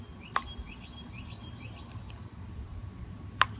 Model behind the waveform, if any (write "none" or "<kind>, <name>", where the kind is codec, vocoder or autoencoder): none